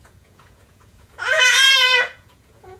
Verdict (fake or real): fake